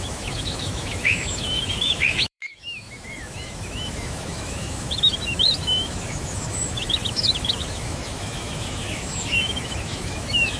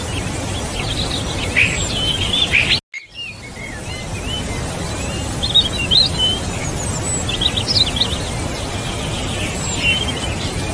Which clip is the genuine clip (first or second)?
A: second